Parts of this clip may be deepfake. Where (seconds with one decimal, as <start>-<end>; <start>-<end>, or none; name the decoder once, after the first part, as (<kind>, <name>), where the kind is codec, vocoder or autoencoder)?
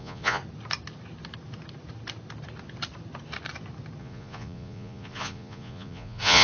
0.0-0.4 (vocoder, Vocos); 4.0-6.4